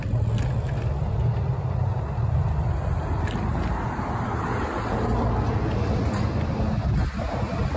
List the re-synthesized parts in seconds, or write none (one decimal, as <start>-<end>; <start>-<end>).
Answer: 3.5-4.9